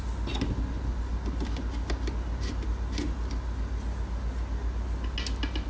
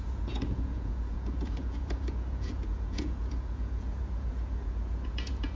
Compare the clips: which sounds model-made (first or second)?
second